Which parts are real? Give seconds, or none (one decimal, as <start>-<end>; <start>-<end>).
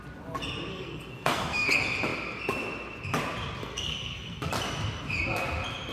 0.0-0.7; 1.7-3.6; 4.5-5.9